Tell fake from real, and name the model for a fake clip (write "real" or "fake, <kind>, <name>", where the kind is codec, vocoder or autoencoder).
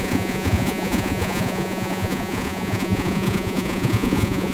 fake, vocoder, Vocos